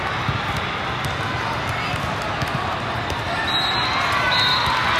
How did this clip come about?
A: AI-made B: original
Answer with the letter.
B